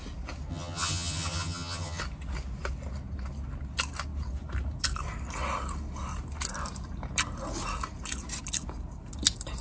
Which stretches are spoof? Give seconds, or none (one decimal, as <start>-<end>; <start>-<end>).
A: 0.5-2.0